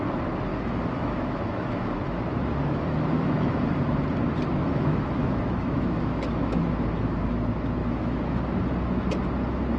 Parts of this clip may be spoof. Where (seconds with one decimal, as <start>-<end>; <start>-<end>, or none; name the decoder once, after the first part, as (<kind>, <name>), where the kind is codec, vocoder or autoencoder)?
0.5-3.6 (autoencoder, DAC-VAE); 4.6-6.7; 7.8-8.4